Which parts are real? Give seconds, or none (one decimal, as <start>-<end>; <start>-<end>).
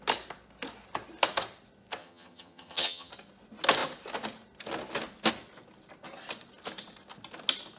0.0-2.0; 3.1-7.8